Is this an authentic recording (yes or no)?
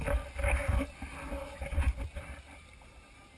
yes